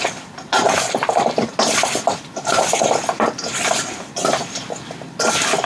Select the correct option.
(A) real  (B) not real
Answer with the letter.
A